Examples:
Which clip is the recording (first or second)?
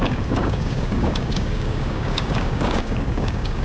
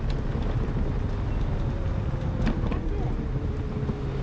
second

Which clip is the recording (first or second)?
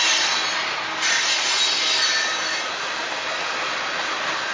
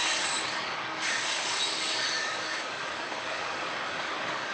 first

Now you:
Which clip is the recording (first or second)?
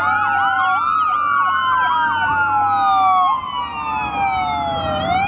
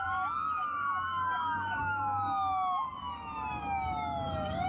first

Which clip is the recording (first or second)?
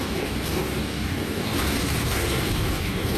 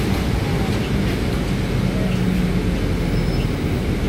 second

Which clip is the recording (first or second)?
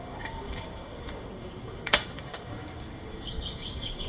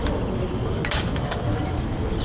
second